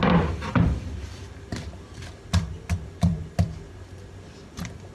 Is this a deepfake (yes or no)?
no